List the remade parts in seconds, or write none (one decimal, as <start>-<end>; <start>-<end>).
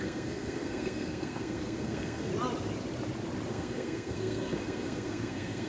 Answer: 0.0-2.3; 3.5-5.7